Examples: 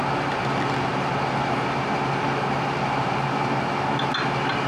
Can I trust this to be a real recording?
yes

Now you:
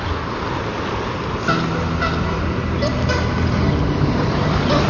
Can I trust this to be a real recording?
yes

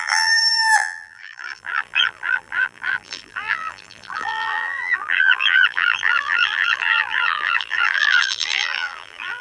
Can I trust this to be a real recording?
no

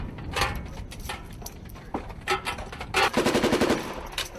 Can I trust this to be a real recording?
no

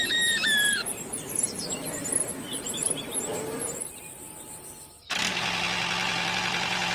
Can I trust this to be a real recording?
no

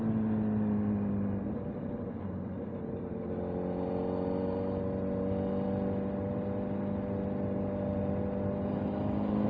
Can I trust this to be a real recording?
yes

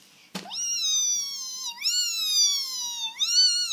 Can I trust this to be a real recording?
yes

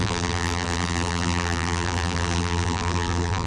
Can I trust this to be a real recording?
no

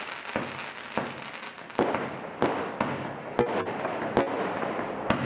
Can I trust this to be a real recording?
yes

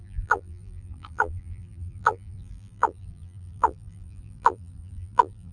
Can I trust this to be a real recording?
no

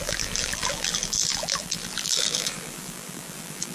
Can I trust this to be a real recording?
no